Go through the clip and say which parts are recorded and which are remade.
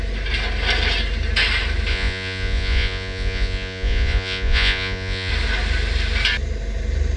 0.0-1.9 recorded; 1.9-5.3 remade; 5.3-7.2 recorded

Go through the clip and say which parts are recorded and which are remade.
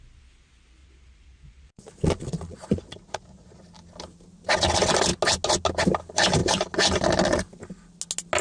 0.0-0.8 recorded; 0.8-3.6 remade; 3.6-8.4 recorded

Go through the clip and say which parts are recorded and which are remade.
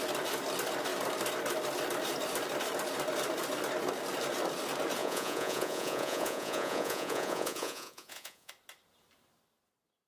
0.0-5.0 recorded; 5.0-8.5 remade; 8.5-10.1 recorded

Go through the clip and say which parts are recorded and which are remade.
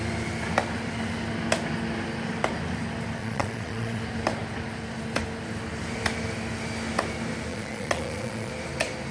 0.0-3.2 recorded; 3.2-4.0 remade; 4.0-7.5 recorded; 7.5-8.5 remade; 8.5-9.1 recorded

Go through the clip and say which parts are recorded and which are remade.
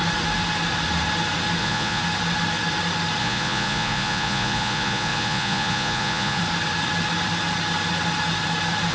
0.0-1.6 recorded; 1.6-2.0 remade; 2.0-3.2 recorded; 3.2-6.4 remade; 6.4-8.9 recorded